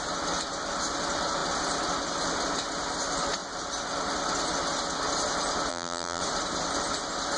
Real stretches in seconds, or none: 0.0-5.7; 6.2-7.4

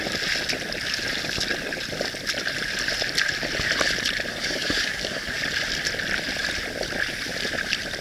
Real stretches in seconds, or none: 0.0-4.3; 5.4-8.0

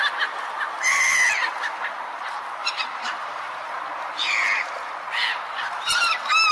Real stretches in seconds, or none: 0.0-2.6

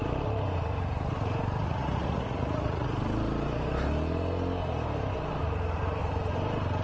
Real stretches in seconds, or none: 0.0-1.6; 2.9-6.8

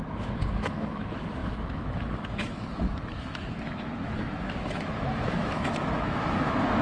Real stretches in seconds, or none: none

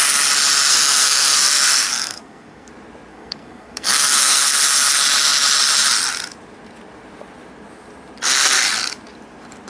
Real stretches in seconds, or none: 0.0-0.7; 2.7-3.1; 4.4-9.7

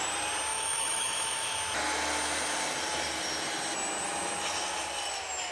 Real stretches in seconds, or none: 0.0-0.5; 1.6-5.5

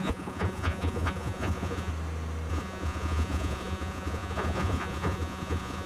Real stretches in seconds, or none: 1.9-2.5